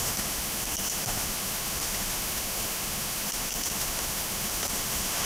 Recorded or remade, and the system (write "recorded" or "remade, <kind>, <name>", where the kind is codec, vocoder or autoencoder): remade, autoencoder, DAC-VAE